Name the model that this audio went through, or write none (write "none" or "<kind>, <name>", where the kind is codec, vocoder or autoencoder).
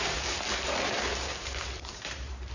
vocoder, BigVGAN v2